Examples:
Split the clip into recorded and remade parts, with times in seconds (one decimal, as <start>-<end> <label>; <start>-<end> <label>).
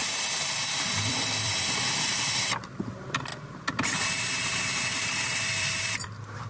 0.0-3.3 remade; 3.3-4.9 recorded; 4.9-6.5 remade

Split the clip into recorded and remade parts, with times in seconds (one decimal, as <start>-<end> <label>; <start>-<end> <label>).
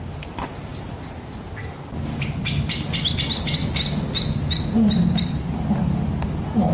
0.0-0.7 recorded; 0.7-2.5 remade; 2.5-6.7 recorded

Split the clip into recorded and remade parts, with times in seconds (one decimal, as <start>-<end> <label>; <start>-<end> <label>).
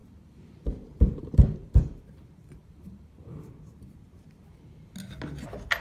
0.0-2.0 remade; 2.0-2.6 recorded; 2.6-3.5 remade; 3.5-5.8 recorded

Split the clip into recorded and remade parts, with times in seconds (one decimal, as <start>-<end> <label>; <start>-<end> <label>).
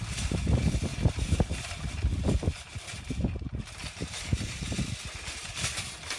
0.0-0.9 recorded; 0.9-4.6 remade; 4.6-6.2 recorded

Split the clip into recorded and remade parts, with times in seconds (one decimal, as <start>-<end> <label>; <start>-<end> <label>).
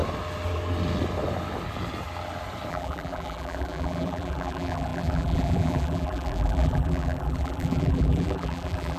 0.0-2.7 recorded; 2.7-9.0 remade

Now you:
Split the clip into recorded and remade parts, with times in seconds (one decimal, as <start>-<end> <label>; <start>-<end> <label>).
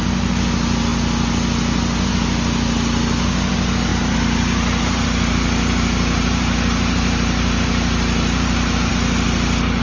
0.0-3.9 recorded; 3.9-8.9 remade; 8.9-9.8 recorded